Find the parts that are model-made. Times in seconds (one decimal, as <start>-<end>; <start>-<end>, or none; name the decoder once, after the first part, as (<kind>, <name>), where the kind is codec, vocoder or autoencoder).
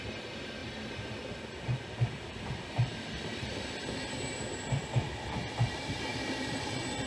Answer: 0.6-4.9 (vocoder, BigVGAN v2); 6.1-7.1